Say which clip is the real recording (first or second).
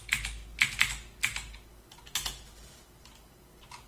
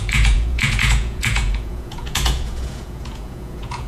first